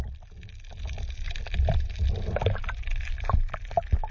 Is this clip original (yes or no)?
yes